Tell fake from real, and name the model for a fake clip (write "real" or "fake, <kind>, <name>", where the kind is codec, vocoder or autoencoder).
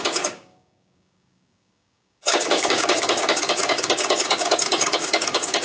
fake, codec, DAC